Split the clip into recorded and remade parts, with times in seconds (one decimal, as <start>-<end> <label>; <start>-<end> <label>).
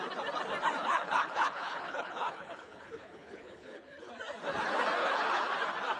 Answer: 0.0-0.8 recorded; 0.8-4.1 remade; 4.1-5.0 recorded; 5.0-5.5 remade; 5.5-6.0 recorded